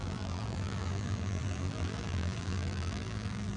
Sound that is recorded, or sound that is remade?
remade